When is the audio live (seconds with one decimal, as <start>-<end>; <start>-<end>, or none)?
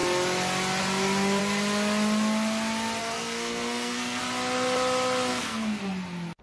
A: 0.0-3.0; 4.2-5.3; 5.8-6.4